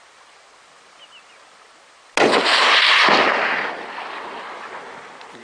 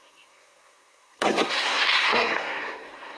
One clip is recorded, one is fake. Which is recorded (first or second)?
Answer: first